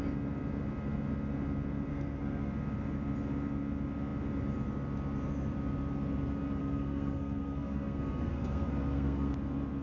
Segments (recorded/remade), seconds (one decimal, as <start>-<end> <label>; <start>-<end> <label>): 0.0-1.9 recorded; 1.9-2.5 remade; 2.5-6.6 recorded; 6.6-9.3 remade; 9.3-9.8 recorded